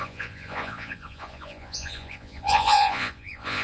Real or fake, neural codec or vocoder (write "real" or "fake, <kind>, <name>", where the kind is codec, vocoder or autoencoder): fake, vocoder, Vocos